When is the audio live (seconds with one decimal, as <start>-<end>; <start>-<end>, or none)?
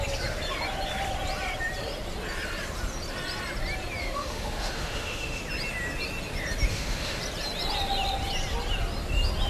0.0-4.0; 5.4-6.7; 7.2-9.5